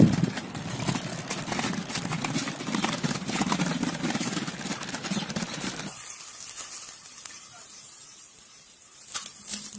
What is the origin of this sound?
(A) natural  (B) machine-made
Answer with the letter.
A